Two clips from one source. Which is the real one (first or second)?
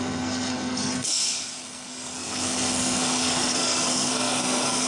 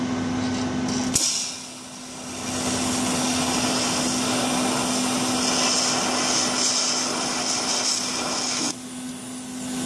second